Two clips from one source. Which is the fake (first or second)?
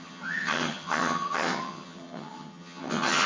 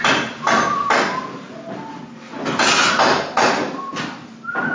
first